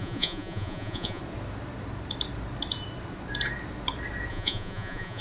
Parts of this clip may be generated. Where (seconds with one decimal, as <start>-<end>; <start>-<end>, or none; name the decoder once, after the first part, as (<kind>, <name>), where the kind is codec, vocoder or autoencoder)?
0.0-1.2 (vocoder, Vocos); 4.3-5.2